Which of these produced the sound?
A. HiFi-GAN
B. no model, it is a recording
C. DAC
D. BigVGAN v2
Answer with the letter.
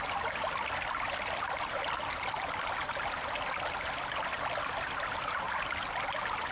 B